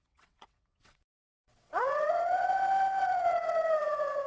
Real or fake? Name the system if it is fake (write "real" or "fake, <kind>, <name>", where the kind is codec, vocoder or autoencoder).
fake, vocoder, WaveNeXt